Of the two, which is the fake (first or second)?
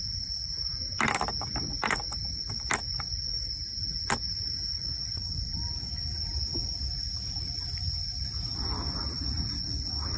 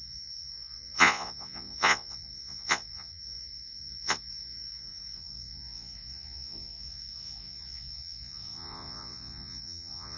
second